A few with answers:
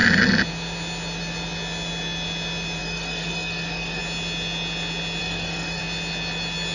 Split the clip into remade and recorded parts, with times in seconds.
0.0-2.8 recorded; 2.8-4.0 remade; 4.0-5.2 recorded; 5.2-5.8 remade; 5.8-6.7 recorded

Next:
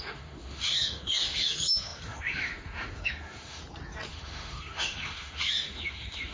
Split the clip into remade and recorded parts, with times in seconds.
0.0-3.6 remade; 3.6-4.1 recorded; 4.1-6.3 remade

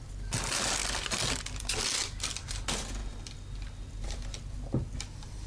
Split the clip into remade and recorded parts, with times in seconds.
0.0-5.5 recorded